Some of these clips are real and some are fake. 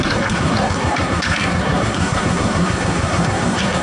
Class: fake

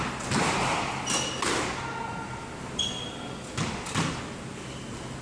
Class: real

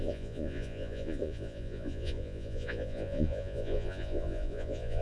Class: fake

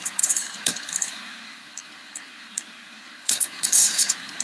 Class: fake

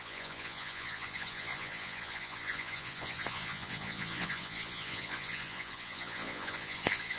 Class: fake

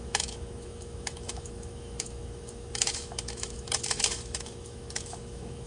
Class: fake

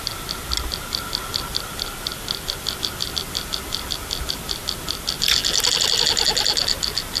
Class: real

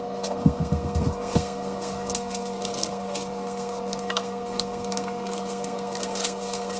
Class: fake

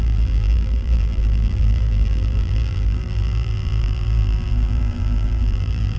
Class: fake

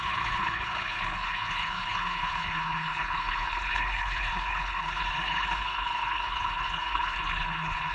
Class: fake